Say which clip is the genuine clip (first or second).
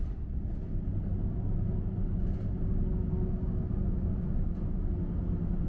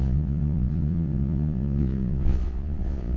first